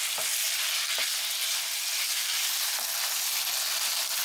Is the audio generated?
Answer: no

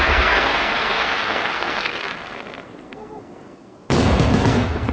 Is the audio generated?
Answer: yes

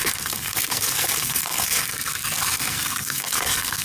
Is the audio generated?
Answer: yes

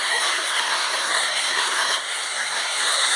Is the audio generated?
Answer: yes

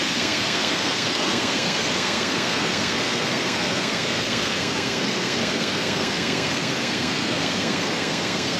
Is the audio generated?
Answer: yes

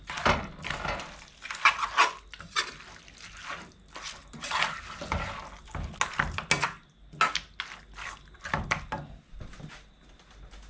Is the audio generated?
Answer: no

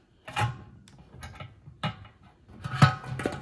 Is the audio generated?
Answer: no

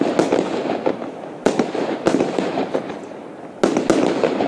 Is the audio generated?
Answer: no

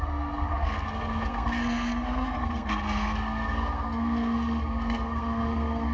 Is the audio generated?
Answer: yes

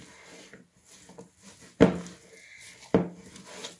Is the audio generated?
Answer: no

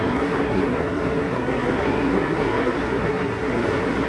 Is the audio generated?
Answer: yes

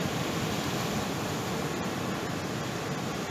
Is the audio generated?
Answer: no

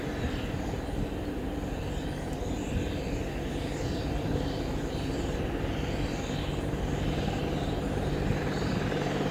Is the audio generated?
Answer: no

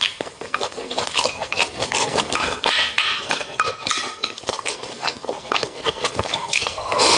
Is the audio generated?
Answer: yes